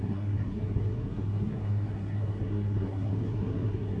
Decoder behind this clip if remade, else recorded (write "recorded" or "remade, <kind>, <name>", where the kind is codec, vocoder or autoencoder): remade, codec, SNAC